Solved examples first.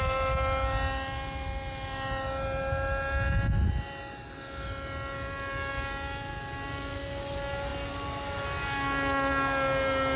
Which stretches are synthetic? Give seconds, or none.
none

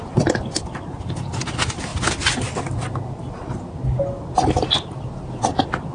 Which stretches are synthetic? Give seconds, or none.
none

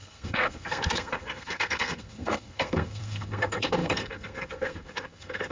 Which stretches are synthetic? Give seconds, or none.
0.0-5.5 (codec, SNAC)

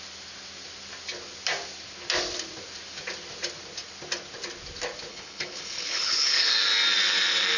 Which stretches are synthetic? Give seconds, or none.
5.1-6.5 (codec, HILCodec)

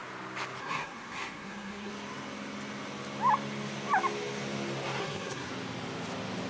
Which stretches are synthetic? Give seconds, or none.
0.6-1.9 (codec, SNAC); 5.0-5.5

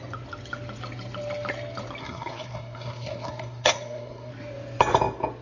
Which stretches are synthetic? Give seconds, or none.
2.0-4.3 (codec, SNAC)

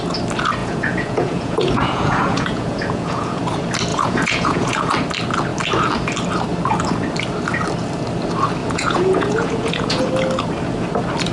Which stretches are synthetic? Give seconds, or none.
0.6-3.4 (vocoder, Vocos); 3.9-4.9; 8.6-10.1